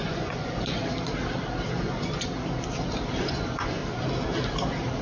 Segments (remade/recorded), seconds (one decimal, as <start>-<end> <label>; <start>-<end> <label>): 0.0-0.8 remade; 0.8-1.8 recorded; 1.8-2.3 remade; 2.3-3.2 recorded; 3.2-3.8 remade; 3.8-5.0 recorded

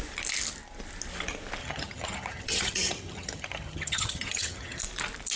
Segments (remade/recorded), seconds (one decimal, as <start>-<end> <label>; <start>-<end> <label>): 0.0-1.6 recorded; 1.6-4.8 remade; 4.8-5.4 recorded

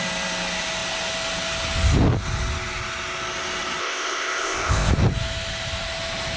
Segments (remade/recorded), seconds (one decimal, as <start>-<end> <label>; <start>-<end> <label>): 0.0-3.8 recorded; 3.8-4.9 remade; 4.9-6.4 recorded

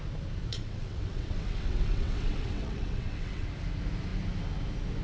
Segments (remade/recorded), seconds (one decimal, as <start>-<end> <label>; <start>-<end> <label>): 0.0-0.5 recorded; 0.5-3.5 remade; 3.5-5.0 recorded